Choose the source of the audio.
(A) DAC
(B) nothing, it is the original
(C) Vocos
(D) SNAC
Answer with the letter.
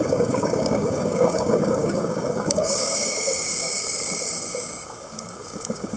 A